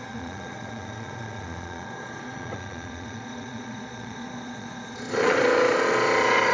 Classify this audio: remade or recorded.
remade